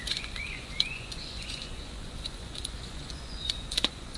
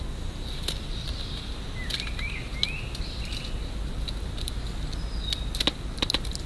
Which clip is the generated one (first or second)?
first